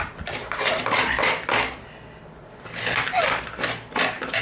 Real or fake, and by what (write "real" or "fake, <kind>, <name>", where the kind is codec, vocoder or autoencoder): real